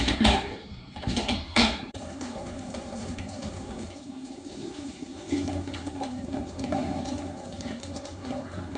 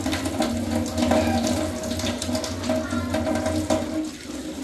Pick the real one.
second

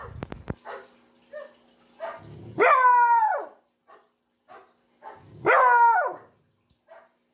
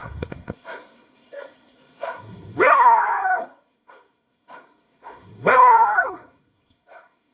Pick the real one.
first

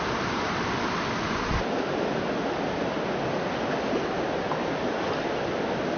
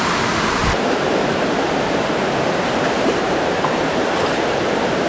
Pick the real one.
first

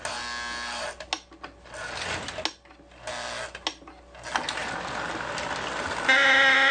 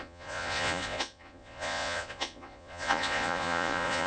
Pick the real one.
first